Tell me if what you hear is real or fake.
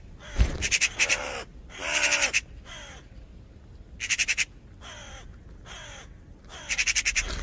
real